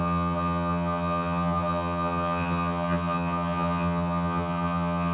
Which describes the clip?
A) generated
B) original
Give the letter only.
A